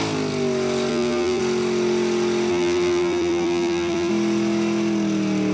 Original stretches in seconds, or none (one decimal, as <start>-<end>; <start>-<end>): 0.0-0.9; 1.4-2.5; 4.1-5.5